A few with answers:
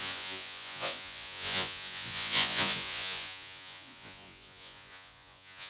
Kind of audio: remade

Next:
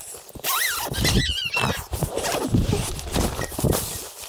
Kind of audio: recorded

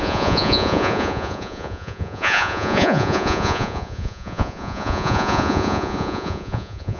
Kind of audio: remade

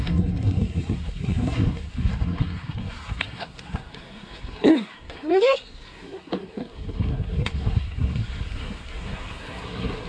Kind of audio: remade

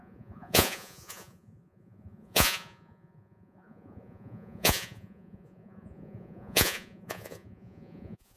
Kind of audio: remade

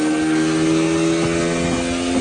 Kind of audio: recorded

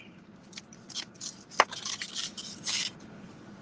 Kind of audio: recorded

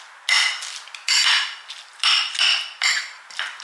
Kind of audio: recorded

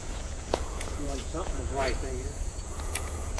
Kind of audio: remade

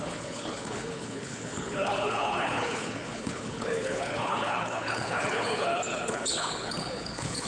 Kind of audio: remade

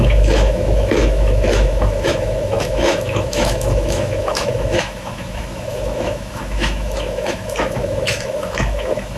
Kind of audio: remade